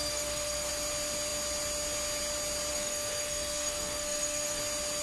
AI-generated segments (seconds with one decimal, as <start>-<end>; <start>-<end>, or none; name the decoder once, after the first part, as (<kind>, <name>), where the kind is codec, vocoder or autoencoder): 0.0-0.7 (codec, SNAC); 2.7-4.6